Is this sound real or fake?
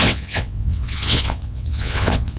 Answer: fake